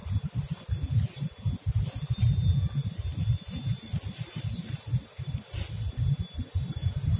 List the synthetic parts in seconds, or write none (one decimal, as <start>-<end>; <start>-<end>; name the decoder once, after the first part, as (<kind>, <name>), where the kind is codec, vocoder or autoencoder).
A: 2.8-3.5 (vocoder, BigVGAN v2)